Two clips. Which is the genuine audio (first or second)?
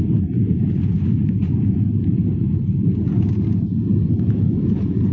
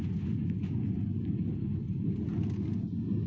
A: second